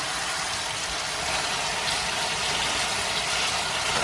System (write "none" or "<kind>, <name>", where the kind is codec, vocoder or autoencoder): none